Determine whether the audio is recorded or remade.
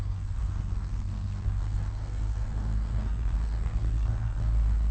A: remade